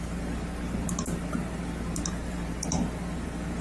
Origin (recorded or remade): recorded